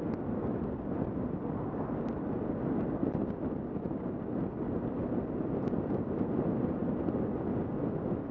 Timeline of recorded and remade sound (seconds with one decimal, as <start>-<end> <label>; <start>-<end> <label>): 0.0-8.3 recorded